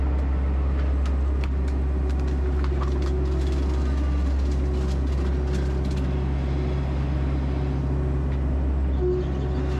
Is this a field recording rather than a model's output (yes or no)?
yes